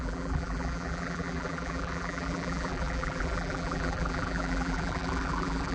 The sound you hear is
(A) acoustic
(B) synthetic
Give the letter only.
B